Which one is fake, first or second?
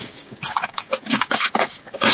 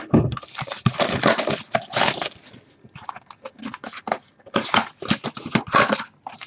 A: first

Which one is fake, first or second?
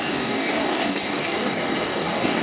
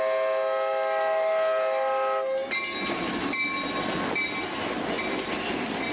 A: first